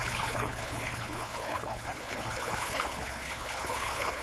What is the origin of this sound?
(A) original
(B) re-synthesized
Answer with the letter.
B